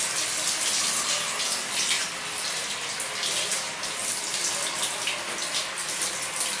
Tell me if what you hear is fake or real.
real